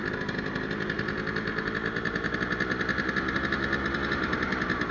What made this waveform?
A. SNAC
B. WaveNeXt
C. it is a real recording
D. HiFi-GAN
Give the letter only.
C